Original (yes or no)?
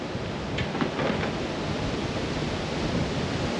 yes